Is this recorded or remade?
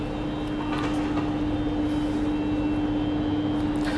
recorded